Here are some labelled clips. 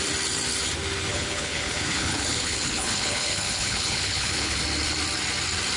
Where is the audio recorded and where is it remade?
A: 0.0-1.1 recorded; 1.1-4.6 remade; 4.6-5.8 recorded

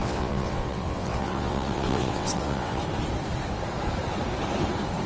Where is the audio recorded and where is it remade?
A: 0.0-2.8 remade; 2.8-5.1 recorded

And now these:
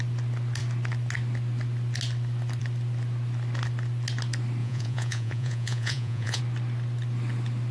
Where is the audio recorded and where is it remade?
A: 0.0-4.6 recorded; 4.6-6.4 remade; 6.4-7.7 recorded